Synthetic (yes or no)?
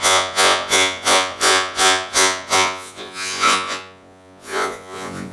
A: yes